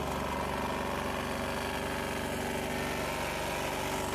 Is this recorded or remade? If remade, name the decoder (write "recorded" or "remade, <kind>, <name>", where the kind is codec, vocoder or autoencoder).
recorded